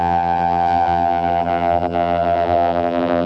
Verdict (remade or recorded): remade